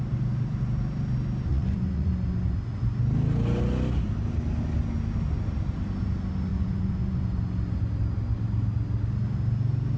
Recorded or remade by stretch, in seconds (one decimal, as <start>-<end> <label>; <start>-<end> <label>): 0.0-1.5 recorded; 1.5-2.1 remade; 2.1-6.5 recorded; 6.5-7.2 remade; 7.2-10.0 recorded

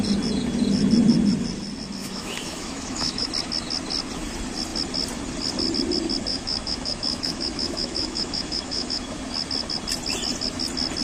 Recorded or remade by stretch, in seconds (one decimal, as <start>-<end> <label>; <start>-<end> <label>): 0.0-2.0 recorded; 2.0-3.3 remade; 3.3-6.3 recorded; 6.3-9.2 remade; 9.2-11.0 recorded

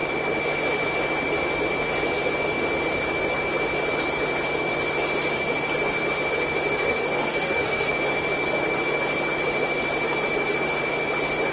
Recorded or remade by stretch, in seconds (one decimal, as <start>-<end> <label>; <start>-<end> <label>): 0.0-6.9 recorded; 6.9-7.9 remade; 7.9-11.5 recorded

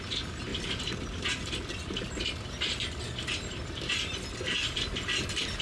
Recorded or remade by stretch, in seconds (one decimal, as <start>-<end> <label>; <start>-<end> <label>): 0.0-5.6 recorded

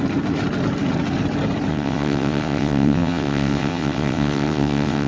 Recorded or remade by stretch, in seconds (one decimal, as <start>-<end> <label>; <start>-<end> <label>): 0.0-1.7 recorded; 1.7-5.1 remade

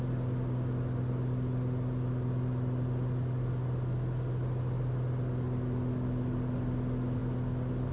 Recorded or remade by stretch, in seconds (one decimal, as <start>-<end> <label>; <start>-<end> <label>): 0.0-7.9 recorded

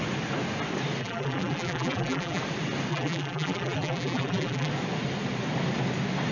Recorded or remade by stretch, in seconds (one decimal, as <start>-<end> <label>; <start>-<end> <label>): 0.0-1.0 recorded; 1.0-2.4 remade; 2.4-2.9 recorded; 2.9-4.7 remade; 4.7-6.3 recorded

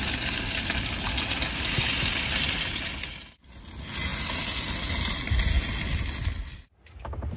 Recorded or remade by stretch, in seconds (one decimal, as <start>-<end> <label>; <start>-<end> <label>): 0.0-7.4 recorded